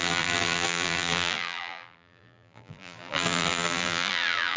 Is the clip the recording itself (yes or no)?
no